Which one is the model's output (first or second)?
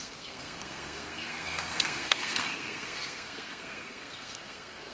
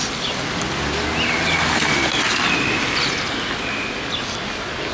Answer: first